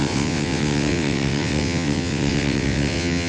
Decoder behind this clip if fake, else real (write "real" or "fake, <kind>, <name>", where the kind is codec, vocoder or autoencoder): fake, vocoder, WaveNeXt